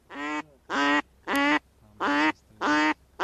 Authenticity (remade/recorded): recorded